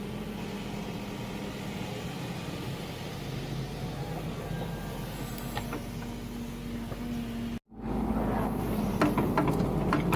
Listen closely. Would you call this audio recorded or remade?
recorded